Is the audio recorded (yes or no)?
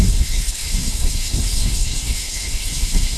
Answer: no